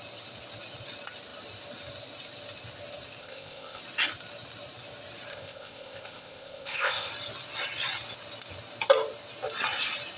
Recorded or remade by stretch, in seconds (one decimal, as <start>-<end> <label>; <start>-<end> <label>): 0.0-3.2 recorded; 3.2-3.8 remade; 3.8-5.3 recorded; 5.3-7.1 remade; 7.1-10.2 recorded